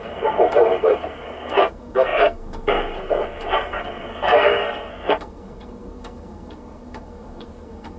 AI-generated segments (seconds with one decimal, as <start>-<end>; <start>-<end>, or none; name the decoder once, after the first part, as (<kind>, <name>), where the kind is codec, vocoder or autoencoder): 0.0-8.0 (codec, SNAC)